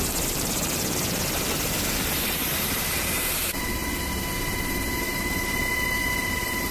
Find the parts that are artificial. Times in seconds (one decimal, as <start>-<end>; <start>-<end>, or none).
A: 0.0-3.8; 5.0-6.7

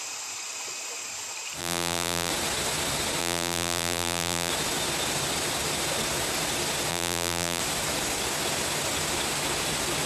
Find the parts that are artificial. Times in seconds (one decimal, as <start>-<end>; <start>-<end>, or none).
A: 1.6-2.3; 3.2-4.5; 6.9-7.6

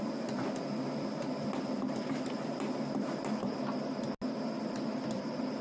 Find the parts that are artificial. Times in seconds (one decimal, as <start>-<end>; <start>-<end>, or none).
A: 0.0-3.5; 4.4-5.6

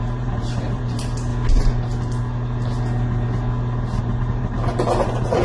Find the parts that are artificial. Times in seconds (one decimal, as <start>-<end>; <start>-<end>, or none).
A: 0.0-1.3; 4.0-5.4

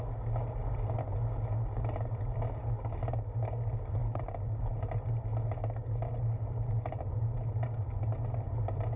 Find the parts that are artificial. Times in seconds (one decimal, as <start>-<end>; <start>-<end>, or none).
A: none

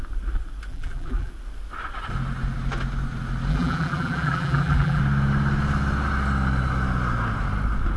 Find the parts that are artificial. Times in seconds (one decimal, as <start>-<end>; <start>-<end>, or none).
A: 0.7-1.3; 3.5-5.0

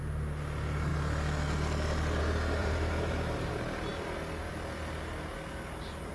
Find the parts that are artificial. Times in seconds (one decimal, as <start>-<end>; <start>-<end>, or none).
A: 2.6-3.5